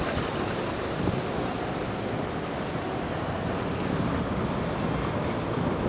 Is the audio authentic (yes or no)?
yes